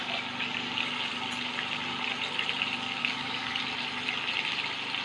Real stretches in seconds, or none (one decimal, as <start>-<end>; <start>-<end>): 0.0-3.0; 3.6-5.0